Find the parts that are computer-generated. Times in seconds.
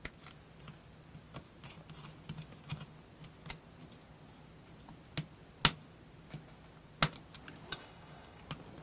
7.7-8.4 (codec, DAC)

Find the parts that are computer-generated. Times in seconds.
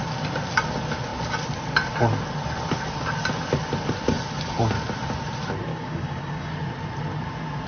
5.7-6.5 (codec, DAC)